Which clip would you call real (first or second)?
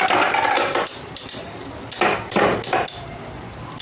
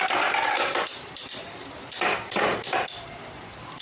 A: first